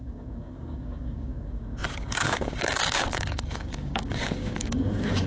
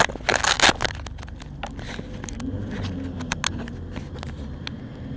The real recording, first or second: second